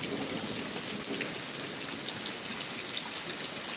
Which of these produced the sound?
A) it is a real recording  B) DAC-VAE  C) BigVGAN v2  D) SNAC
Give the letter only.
A